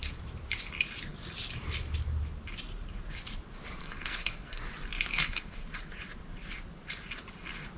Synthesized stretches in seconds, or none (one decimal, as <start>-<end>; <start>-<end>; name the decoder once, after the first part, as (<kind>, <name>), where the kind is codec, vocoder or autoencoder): 3.8-4.6 (codec, SNAC); 5.1-5.6